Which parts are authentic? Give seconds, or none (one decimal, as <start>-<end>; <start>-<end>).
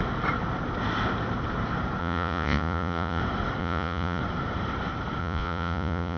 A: 0.0-2.0; 3.2-3.6; 4.2-5.2